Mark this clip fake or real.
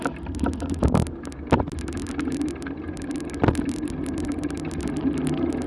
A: real